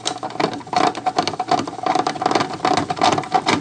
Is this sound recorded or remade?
recorded